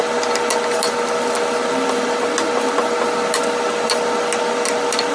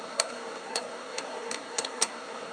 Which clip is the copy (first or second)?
second